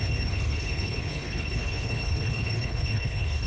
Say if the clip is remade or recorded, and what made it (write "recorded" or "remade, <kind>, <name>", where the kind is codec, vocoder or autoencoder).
remade, codec, HILCodec